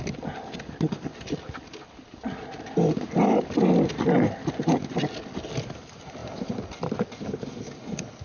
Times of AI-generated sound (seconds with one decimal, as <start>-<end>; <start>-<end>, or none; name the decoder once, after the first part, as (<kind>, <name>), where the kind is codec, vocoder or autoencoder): none